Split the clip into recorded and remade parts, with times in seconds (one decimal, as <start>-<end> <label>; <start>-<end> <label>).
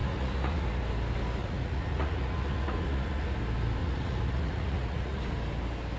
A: 0.0-0.8 remade; 0.8-1.4 recorded; 1.4-3.4 remade; 3.4-3.8 recorded; 3.8-5.2 remade; 5.2-6.0 recorded